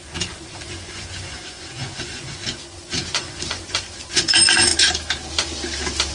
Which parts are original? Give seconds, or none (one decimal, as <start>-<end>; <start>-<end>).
4.7-6.1